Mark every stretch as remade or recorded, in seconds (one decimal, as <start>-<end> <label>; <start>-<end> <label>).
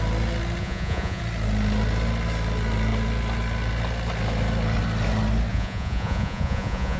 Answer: 0.0-0.6 recorded; 0.6-1.2 remade; 1.2-5.5 recorded; 5.5-7.0 remade